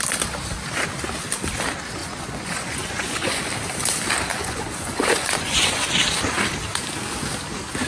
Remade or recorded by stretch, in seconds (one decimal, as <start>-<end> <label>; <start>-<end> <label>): 0.0-2.0 recorded; 2.0-3.4 remade; 3.4-4.3 recorded; 4.3-5.9 remade; 5.9-7.9 recorded